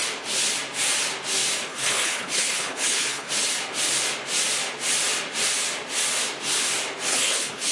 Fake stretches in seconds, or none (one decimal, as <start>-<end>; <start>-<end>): 1.7-3.3; 7.1-7.7